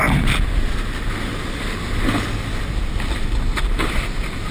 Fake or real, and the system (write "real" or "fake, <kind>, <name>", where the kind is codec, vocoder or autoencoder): real